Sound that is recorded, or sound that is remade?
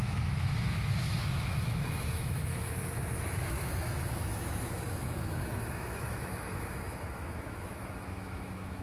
remade